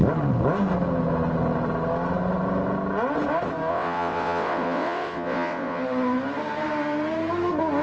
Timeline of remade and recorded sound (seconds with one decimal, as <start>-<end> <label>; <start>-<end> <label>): 0.0-3.7 recorded; 3.7-5.8 remade; 5.8-7.8 recorded